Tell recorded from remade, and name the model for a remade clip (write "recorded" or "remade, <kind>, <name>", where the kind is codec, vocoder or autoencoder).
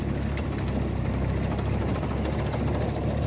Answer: recorded